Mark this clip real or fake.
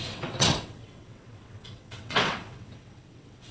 fake